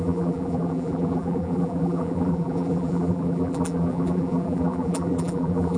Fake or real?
fake